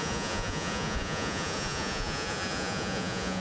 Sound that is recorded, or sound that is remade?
remade